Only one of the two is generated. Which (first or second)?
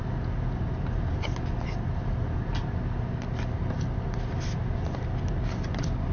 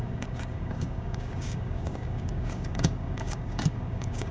second